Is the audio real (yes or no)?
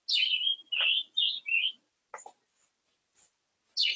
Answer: yes